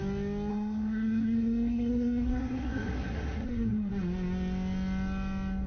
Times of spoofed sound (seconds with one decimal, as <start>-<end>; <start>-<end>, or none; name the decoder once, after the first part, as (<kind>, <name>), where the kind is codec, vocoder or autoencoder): 0.5-3.9 (codec, SNAC)